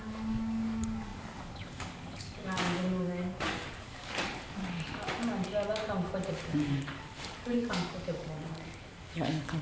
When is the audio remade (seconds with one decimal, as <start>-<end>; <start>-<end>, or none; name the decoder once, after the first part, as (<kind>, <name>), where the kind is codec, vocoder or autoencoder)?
0.0-4.6 (codec, DAC); 6.3-9.6